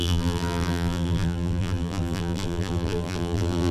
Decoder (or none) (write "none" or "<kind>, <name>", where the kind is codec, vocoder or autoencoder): vocoder, BigVGAN v2